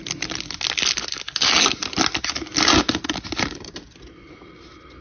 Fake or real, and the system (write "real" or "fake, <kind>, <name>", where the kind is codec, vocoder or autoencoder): real